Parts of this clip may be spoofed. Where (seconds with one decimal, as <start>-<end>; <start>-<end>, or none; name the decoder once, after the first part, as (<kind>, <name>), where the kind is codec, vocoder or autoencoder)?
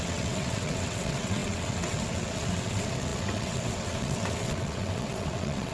0.0-5.7 (vocoder, WaveNeXt)